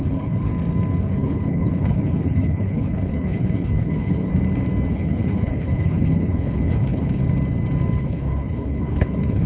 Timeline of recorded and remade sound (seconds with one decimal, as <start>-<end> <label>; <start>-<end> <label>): 0.0-0.5 remade; 0.5-1.0 recorded; 1.0-4.3 remade; 4.3-4.9 recorded; 4.9-7.2 remade; 7.2-8.0 recorded; 8.0-9.5 remade